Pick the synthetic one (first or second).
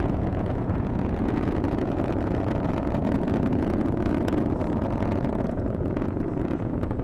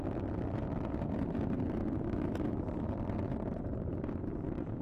first